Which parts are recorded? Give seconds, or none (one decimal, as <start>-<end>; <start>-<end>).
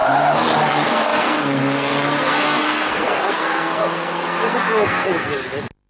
0.0-0.7; 5.4-5.9